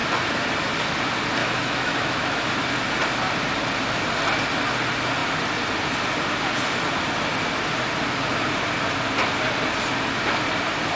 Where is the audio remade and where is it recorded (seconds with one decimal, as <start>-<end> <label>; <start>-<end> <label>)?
0.0-1.4 recorded; 1.4-2.5 remade; 2.5-11.0 recorded